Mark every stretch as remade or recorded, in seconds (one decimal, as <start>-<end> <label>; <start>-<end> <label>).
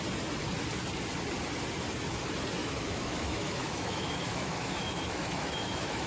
0.0-2.6 recorded; 2.6-6.1 remade